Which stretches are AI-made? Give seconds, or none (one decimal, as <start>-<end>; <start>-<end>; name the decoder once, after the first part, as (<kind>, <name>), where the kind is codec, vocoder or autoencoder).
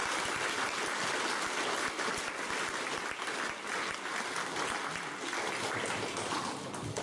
none